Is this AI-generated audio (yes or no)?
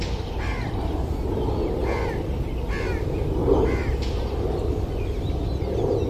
no